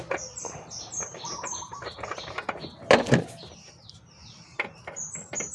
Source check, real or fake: real